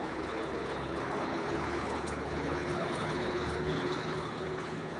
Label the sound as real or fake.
fake